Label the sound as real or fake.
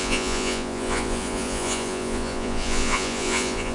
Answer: fake